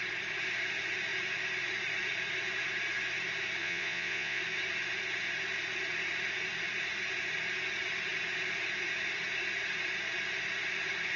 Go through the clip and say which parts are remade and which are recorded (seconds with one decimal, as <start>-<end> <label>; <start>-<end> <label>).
0.0-3.6 recorded; 3.6-4.4 remade; 4.4-11.2 recorded